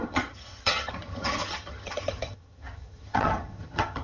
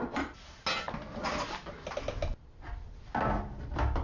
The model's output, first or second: first